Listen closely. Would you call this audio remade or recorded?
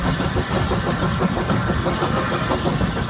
recorded